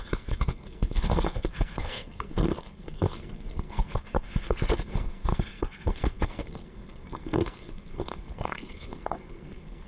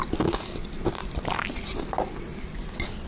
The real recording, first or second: second